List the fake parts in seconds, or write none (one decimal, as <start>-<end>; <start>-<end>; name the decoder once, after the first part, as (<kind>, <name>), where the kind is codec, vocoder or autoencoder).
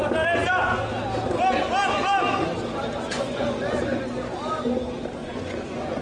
3.1-4.0 (vocoder, Vocos); 5.2-6.0